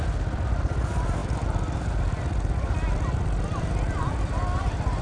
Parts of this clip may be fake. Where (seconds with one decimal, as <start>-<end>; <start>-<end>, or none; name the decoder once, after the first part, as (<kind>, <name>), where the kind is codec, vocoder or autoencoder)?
none